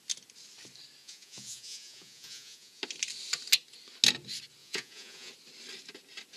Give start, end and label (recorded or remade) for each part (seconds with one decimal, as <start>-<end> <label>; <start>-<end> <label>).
0.0-1.0 recorded; 1.0-2.8 remade; 2.8-4.6 recorded; 4.6-5.3 remade; 5.3-6.4 recorded